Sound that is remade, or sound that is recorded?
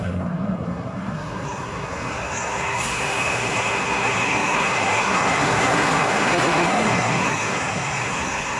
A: remade